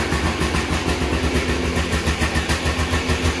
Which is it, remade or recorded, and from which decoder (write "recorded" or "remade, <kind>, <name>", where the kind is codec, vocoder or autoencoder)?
recorded